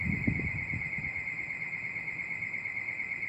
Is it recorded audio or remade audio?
recorded